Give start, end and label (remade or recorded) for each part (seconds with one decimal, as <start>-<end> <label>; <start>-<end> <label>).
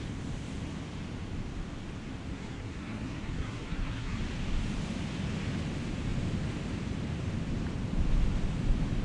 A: 0.0-2.3 recorded; 2.3-4.2 remade; 4.2-9.0 recorded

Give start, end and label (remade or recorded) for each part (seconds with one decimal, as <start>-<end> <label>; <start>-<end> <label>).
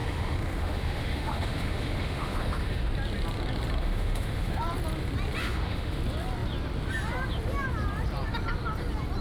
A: 0.0-2.9 remade; 2.9-3.8 recorded; 3.8-4.6 remade; 4.6-5.4 recorded; 5.4-6.0 remade; 6.0-9.2 recorded